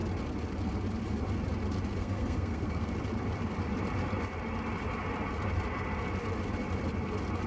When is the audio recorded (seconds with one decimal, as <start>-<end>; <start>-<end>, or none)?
0.0-2.0; 2.9-7.5